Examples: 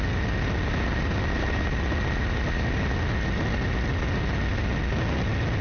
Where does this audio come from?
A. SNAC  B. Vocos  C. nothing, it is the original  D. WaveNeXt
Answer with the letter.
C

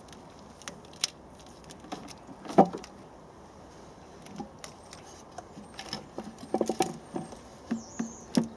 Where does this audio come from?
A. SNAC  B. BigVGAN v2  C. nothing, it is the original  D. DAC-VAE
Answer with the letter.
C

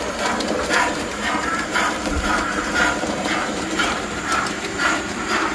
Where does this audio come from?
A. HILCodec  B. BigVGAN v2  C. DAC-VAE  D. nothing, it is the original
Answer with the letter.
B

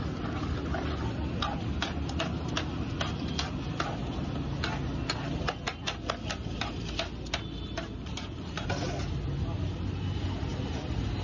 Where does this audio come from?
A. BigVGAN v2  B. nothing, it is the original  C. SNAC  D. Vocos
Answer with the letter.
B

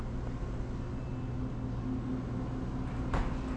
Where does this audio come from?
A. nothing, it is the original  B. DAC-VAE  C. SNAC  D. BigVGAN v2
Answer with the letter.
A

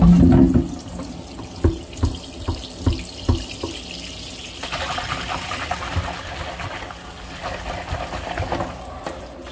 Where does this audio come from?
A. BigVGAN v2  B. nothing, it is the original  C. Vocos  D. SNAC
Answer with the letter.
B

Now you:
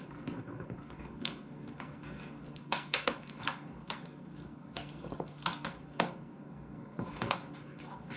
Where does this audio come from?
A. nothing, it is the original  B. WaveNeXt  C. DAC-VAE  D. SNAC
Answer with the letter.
D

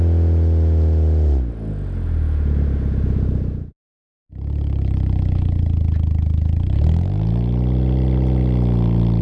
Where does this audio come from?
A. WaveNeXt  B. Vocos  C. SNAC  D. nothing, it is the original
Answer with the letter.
D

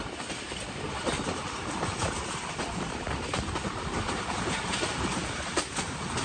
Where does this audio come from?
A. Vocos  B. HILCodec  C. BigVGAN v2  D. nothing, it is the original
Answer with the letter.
C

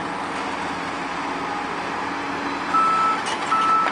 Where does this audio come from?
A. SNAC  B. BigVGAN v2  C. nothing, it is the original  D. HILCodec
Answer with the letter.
C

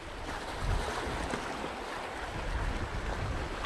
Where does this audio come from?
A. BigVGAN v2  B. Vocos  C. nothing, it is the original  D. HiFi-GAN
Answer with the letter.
C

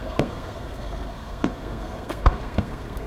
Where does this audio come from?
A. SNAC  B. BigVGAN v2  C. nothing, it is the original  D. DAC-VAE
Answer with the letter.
A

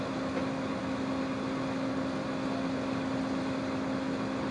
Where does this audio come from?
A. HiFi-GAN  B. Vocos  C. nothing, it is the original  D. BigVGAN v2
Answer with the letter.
C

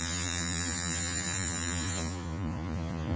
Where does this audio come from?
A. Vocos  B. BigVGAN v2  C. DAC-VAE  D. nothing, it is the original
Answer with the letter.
A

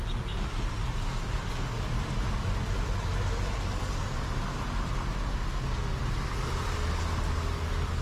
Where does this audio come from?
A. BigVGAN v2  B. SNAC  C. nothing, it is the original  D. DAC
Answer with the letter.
C